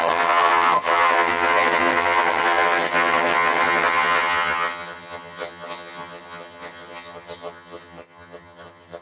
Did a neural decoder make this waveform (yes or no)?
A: yes